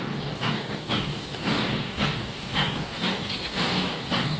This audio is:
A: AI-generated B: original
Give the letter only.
A